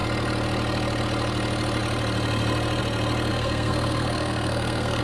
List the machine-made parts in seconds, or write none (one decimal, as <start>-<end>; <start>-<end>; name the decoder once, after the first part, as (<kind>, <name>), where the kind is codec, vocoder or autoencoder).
3.3-5.0 (codec, SNAC)